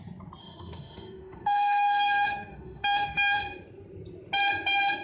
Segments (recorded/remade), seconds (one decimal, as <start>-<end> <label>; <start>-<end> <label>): 0.0-0.4 recorded; 0.4-3.4 remade; 3.4-5.0 recorded

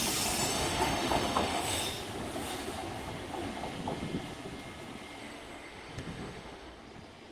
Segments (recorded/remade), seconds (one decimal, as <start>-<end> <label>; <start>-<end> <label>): 0.0-0.5 recorded; 0.5-1.8 remade; 1.8-5.2 recorded; 5.2-6.8 remade; 6.8-7.3 recorded

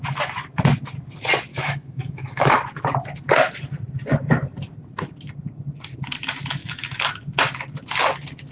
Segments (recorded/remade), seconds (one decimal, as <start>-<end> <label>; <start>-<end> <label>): 0.0-1.5 recorded; 1.5-2.6 remade; 2.6-6.6 recorded; 6.6-7.1 remade; 7.1-8.5 recorded

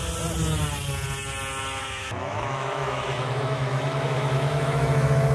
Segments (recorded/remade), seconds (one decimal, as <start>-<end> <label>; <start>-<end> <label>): 0.0-1.8 recorded; 1.8-5.3 remade

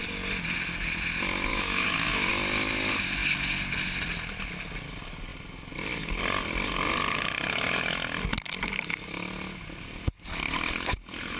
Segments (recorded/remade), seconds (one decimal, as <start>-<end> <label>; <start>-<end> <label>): 0.0-1.5 recorded; 1.5-2.3 remade; 2.3-11.4 recorded